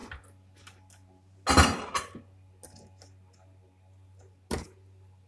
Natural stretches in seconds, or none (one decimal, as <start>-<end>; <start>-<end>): 0.0-5.3